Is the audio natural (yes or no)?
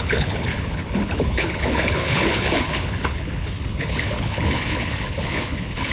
no